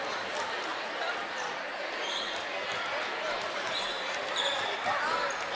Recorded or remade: recorded